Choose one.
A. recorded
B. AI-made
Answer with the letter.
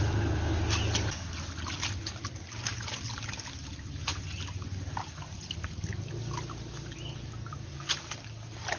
A